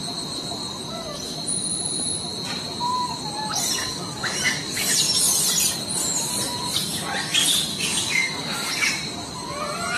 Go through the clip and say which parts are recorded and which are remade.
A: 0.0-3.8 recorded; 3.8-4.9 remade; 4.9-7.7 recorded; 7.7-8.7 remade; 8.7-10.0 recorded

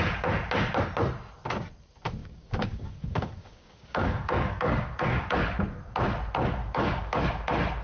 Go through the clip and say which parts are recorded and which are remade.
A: 0.0-2.2 recorded; 2.2-5.3 remade; 5.3-6.6 recorded; 6.6-7.2 remade; 7.2-7.8 recorded

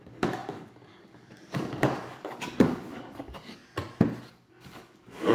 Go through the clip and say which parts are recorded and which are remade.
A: 0.0-3.6 remade; 3.6-4.3 recorded; 4.3-5.3 remade

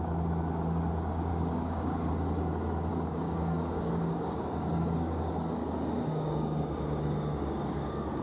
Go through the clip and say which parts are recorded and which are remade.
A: 0.0-1.3 recorded; 1.3-2.1 remade; 2.1-2.9 recorded; 2.9-8.2 remade

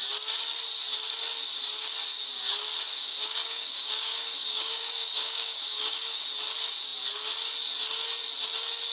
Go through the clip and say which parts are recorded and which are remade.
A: 0.0-3.1 recorded; 3.1-6.2 remade; 6.2-8.9 recorded

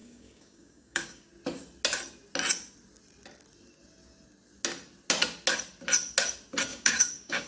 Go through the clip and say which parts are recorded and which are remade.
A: 0.0-1.3 remade; 1.3-6.7 recorded; 6.7-7.5 remade

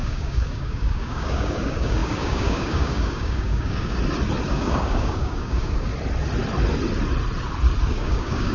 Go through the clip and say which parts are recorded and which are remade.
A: 0.0-4.0 remade; 4.0-4.5 recorded; 4.5-5.9 remade; 5.9-7.9 recorded; 7.9-8.5 remade